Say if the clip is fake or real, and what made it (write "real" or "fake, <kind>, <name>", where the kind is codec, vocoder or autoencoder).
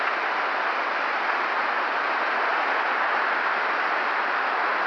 real